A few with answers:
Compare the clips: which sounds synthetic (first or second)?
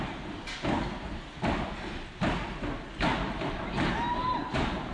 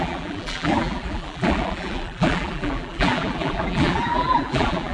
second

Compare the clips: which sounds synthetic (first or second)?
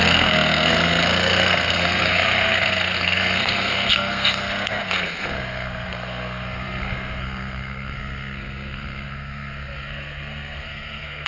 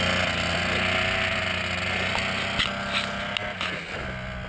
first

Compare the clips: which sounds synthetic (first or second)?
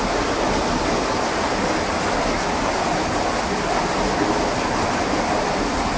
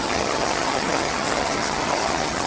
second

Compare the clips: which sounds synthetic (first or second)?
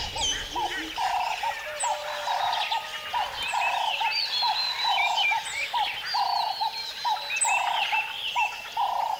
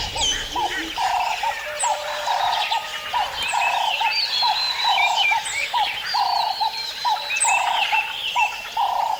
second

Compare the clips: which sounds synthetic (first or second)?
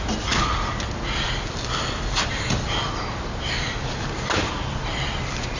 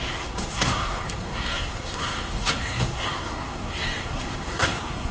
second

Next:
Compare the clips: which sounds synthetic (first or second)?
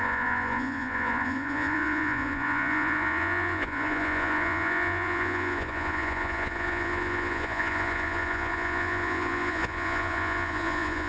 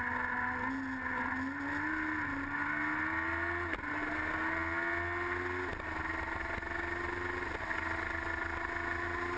first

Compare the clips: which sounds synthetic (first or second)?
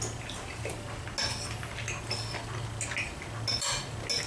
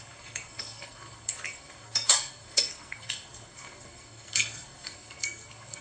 second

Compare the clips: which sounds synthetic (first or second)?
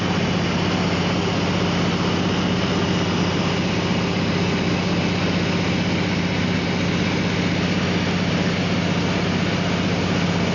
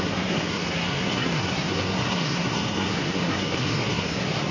second